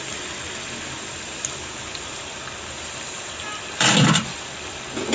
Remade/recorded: recorded